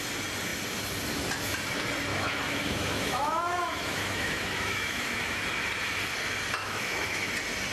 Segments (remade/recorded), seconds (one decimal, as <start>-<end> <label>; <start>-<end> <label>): 0.0-2.1 recorded; 2.1-5.4 remade; 5.4-6.6 recorded; 6.6-7.3 remade; 7.3-7.7 recorded